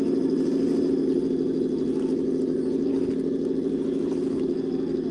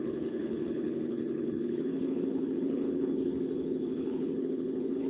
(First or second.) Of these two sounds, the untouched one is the first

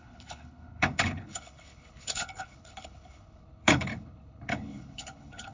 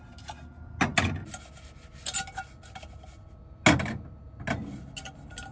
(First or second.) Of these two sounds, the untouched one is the second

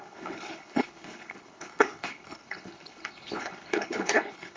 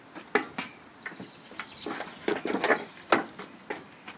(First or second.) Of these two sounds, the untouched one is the second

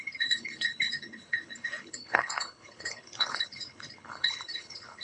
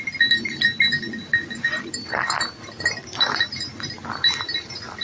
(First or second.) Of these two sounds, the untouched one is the second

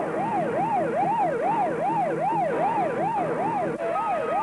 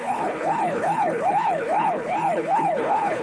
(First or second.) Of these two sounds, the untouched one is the first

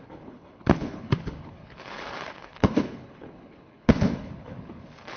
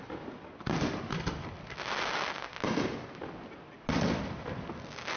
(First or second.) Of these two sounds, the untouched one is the second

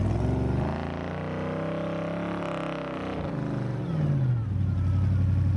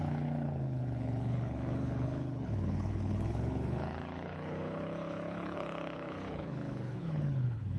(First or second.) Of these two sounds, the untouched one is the first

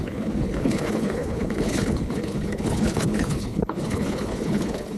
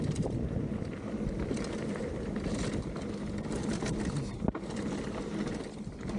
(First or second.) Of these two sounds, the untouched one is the second